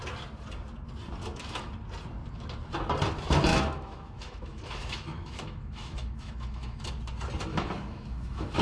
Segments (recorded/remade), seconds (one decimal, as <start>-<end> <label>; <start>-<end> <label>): 0.0-1.2 recorded; 1.2-1.7 remade; 1.7-3.5 recorded; 3.5-6.9 remade; 6.9-7.5 recorded; 7.5-8.6 remade